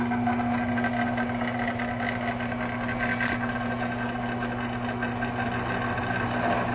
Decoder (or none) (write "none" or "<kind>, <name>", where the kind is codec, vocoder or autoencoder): none